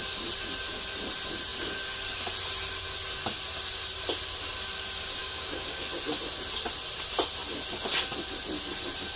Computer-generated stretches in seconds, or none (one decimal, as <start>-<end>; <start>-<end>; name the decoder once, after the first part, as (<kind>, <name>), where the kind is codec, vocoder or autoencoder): 5.2-5.8 (codec, DAC)